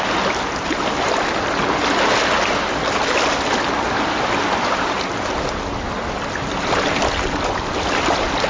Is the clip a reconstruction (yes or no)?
no